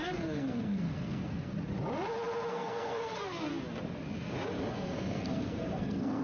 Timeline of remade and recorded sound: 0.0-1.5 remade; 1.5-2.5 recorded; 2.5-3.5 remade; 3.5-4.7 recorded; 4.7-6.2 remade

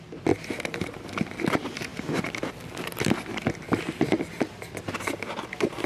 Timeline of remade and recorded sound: 0.0-5.9 recorded